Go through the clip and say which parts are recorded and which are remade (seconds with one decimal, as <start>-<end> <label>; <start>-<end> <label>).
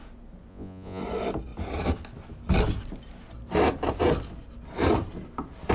0.0-0.5 recorded; 0.5-1.0 remade; 1.0-5.7 recorded